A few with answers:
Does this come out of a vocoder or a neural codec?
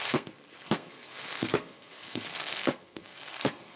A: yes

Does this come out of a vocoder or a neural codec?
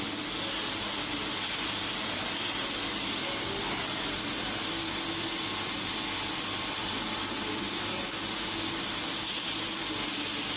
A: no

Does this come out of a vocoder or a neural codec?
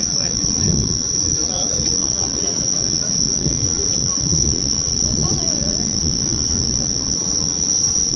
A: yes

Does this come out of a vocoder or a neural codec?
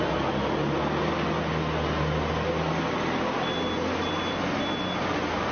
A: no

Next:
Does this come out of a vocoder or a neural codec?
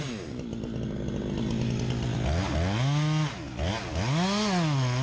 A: no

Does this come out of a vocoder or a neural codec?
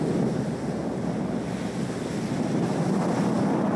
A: no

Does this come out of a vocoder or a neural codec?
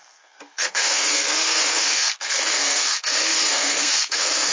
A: yes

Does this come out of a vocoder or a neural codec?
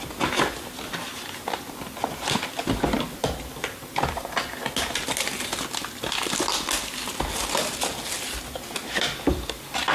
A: no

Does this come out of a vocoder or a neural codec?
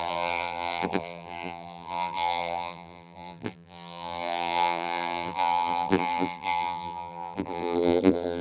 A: yes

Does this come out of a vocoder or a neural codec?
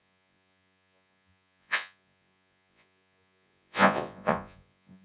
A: yes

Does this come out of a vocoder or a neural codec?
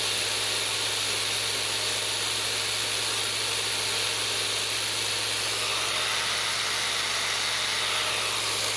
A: no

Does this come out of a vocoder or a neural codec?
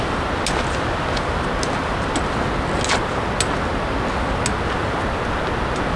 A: no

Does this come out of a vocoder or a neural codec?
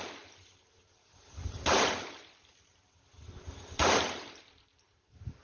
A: no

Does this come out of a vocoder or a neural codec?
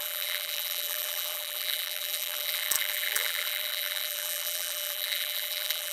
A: yes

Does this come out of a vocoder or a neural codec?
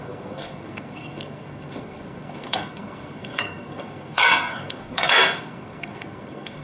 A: yes